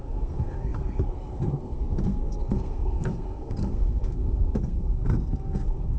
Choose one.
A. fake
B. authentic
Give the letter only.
A